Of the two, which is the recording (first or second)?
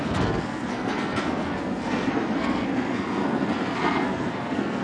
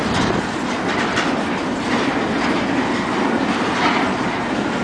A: second